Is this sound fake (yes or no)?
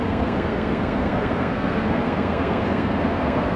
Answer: yes